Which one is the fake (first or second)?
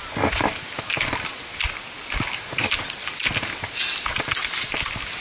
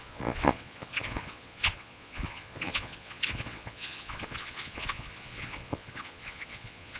second